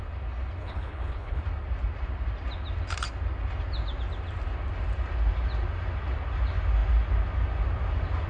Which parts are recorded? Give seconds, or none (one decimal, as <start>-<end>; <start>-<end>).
0.0-0.6; 1.4-8.3